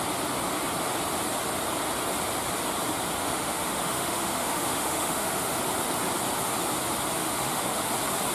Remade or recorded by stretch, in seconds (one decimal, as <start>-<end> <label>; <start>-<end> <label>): 0.0-3.2 recorded; 3.2-5.6 remade; 5.6-7.2 recorded; 7.2-7.9 remade; 7.9-8.3 recorded